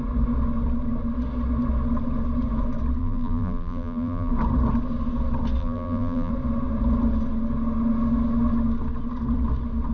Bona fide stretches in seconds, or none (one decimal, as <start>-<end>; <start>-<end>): 0.0-3.0; 4.3-5.6; 6.3-9.9